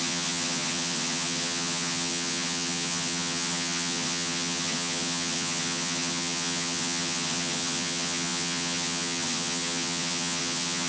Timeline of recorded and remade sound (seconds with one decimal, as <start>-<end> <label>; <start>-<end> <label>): 0.0-10.9 remade